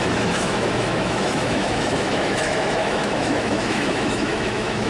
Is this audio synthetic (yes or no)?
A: yes